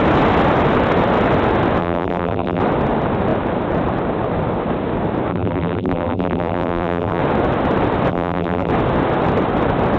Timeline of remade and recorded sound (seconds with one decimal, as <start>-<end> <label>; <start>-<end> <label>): 0.0-1.8 recorded; 1.8-2.6 remade; 2.6-5.3 recorded; 5.3-7.2 remade; 7.2-8.1 recorded; 8.1-8.7 remade; 8.7-10.0 recorded